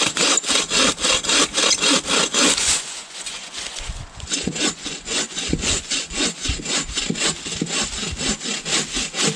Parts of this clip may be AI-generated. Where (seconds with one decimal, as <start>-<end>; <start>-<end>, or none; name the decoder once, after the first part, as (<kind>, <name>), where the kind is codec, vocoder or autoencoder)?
2.2-7.1 (vocoder, Vocos)